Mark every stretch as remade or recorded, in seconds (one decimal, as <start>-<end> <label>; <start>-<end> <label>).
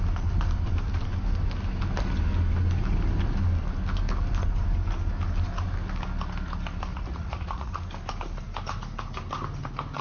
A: 0.0-6.9 recorded; 6.9-7.7 remade; 7.7-10.0 recorded